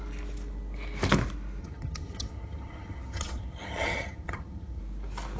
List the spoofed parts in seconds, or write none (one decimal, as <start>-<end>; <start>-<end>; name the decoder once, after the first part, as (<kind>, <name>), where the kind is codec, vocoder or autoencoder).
1.6-4.8 (vocoder, HiFi-GAN)